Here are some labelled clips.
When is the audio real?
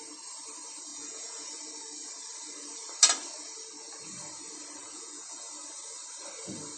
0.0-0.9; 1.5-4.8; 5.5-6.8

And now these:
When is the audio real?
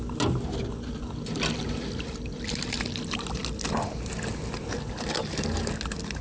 0.0-6.2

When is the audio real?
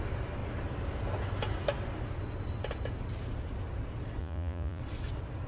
0.0-4.2; 4.8-5.5